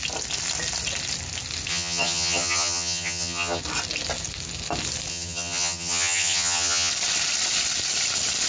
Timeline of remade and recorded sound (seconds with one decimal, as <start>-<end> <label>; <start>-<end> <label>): 0.0-1.7 recorded; 1.7-3.6 remade; 3.6-5.1 recorded; 5.1-6.9 remade; 6.9-8.5 recorded